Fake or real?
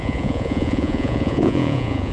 fake